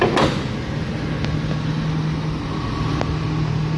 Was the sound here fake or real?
real